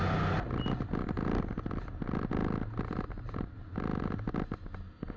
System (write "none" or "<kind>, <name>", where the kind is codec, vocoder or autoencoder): none